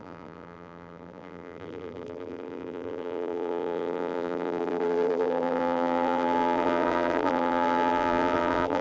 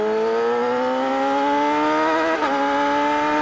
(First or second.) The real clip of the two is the second